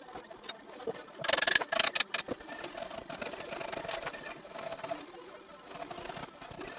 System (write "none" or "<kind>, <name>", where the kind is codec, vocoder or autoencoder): none